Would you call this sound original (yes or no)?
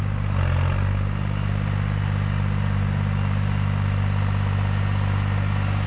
yes